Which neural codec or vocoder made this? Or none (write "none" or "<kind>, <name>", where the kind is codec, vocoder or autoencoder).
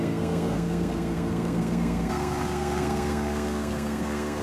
codec, SNAC